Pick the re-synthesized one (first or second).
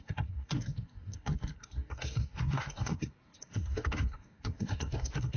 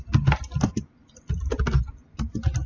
first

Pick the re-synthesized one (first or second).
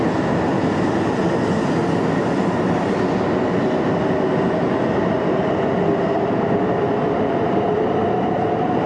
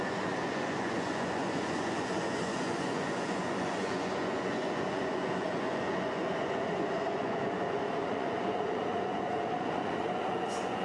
second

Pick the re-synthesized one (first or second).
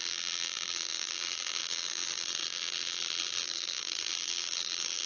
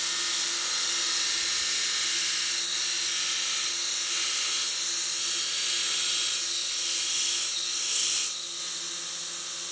first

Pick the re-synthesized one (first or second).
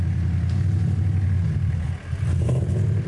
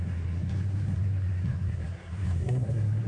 second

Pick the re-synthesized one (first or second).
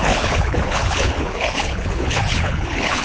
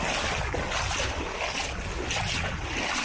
first